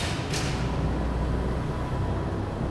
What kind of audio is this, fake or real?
real